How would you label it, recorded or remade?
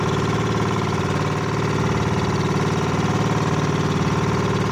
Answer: recorded